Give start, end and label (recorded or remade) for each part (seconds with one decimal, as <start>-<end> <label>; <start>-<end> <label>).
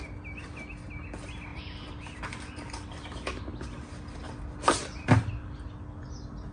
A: 0.0-6.5 recorded